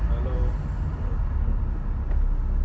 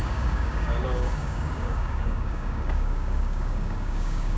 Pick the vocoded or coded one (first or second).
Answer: second